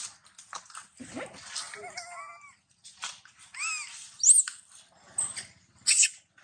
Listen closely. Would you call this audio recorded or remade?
recorded